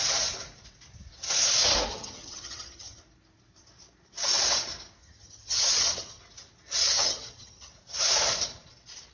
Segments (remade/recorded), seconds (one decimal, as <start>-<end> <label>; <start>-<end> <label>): 0.0-1.9 recorded; 1.9-3.0 remade; 3.0-5.0 recorded; 5.0-6.2 remade; 6.2-6.8 recorded; 6.8-7.7 remade; 7.7-9.1 recorded